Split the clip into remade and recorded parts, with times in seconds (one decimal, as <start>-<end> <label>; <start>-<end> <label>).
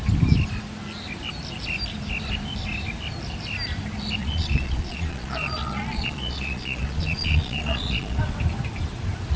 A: 0.0-4.2 recorded; 4.2-8.2 remade; 8.2-9.4 recorded